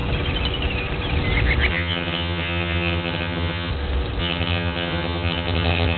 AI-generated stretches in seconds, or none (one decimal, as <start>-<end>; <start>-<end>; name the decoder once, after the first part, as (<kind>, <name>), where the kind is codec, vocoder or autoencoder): 1.7-3.7 (vocoder, HiFi-GAN); 4.2-6.0